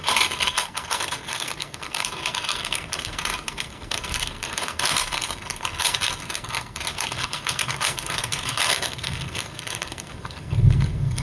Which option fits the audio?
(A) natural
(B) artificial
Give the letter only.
B